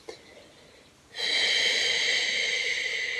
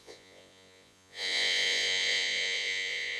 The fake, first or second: second